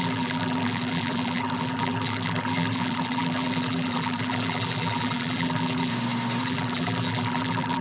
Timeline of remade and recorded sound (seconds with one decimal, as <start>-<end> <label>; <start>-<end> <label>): 0.0-5.9 remade; 5.9-6.4 recorded; 6.4-7.8 remade